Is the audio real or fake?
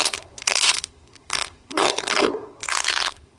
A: fake